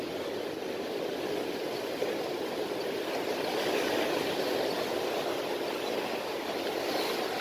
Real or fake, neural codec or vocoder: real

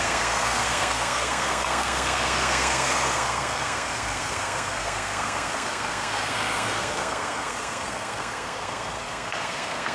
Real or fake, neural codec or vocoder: fake, codec, SNAC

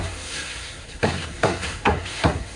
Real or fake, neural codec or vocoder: fake, codec, SNAC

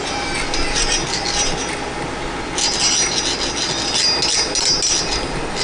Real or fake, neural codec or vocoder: real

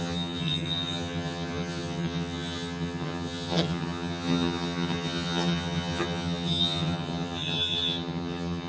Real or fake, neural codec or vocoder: fake, vocoder, HiFi-GAN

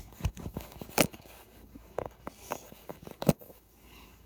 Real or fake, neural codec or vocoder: fake, codec, DAC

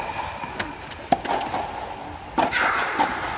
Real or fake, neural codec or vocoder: real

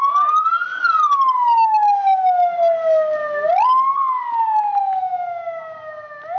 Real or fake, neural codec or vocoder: real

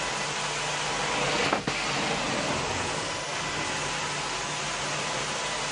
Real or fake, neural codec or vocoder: real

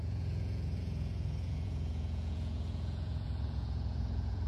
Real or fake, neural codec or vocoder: fake, vocoder, Vocos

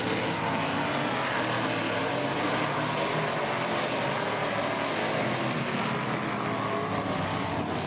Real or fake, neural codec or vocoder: real